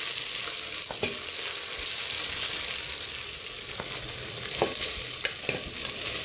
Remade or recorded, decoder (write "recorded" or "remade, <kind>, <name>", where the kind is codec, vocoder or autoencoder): recorded